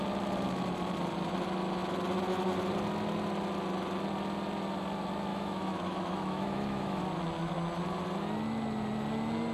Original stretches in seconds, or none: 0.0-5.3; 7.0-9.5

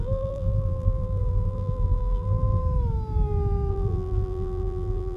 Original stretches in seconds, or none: 2.6-3.7

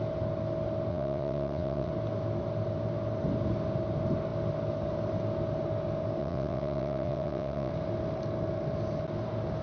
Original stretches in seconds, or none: 0.0-0.9; 1.9-6.2; 7.7-9.6

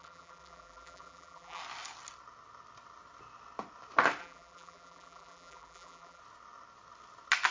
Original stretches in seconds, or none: 1.6-4.2; 6.2-7.5